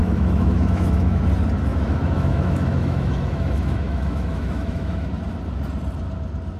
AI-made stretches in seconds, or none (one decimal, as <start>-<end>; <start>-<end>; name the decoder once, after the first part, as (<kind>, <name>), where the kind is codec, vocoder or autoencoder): 0.0-1.2 (autoencoder, DAC-VAE); 1.7-5.1